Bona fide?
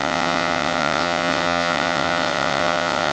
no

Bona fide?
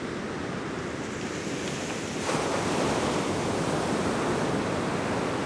yes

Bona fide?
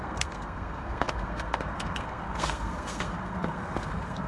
no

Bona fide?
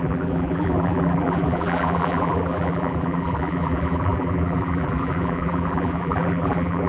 no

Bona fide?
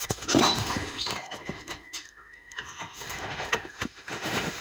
no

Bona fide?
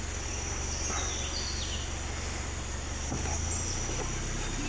yes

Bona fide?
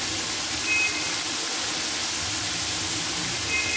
yes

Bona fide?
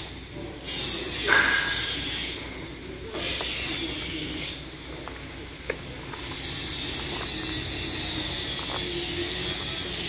yes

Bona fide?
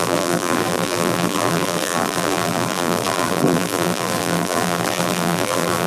no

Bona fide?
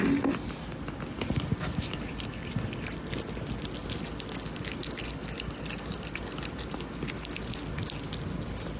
yes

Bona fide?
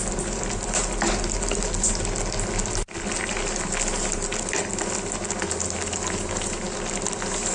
yes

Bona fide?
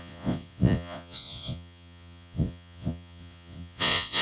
no